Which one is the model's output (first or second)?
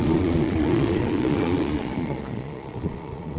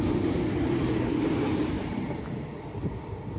first